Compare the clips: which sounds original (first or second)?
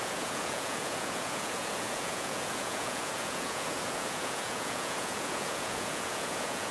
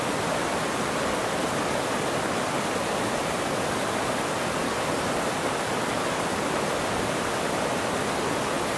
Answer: second